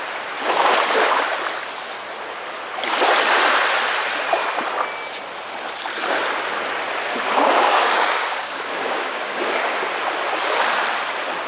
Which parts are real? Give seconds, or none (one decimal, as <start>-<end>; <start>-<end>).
0.0-7.6; 9.8-11.5